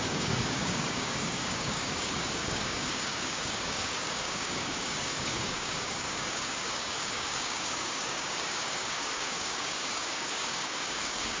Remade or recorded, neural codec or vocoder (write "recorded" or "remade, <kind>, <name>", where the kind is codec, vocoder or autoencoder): remade, codec, DAC